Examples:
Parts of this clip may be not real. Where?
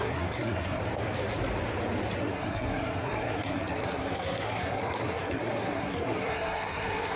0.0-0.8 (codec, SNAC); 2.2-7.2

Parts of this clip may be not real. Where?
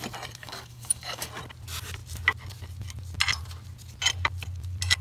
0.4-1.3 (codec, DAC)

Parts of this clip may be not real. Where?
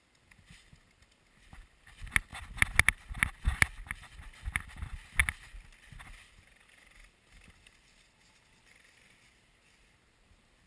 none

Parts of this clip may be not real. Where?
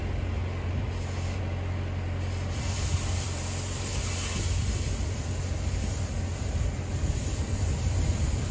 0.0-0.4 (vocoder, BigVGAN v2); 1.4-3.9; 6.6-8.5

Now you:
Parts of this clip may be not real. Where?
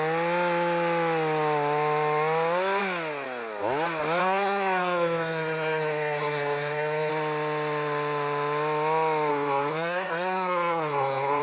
4.2-7.1 (codec, SNAC); 9.3-11.4